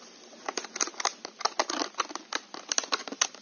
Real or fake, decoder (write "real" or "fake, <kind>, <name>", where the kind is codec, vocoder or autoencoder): real